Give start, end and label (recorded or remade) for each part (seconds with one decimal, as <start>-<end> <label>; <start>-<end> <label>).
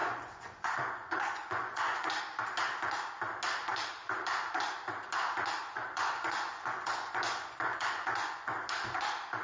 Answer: 0.0-2.2 remade; 2.2-5.6 recorded; 5.6-8.5 remade; 8.5-9.4 recorded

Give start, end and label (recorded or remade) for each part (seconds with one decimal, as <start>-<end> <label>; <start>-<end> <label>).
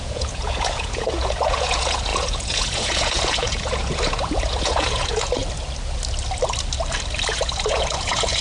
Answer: 0.0-5.4 remade; 5.4-7.3 recorded; 7.3-8.4 remade